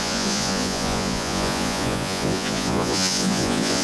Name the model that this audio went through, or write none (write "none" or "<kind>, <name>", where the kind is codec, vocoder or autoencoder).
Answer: vocoder, Vocos